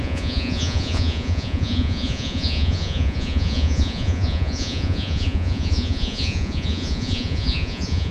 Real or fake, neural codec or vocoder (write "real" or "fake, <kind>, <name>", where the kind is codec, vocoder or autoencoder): fake, vocoder, Vocos